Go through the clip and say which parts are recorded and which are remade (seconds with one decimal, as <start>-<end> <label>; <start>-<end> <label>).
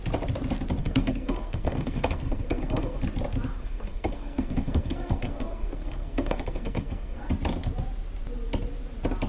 0.0-0.8 recorded; 0.8-3.0 remade; 3.0-3.6 recorded; 3.6-7.3 remade; 7.3-9.3 recorded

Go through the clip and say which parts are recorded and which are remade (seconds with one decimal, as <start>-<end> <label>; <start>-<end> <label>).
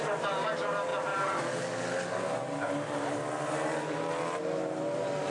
0.0-5.3 recorded